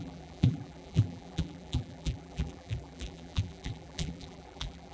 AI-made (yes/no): yes